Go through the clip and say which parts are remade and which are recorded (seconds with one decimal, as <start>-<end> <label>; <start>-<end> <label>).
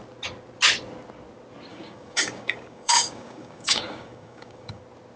0.0-1.7 recorded; 1.7-4.8 remade; 4.8-5.2 recorded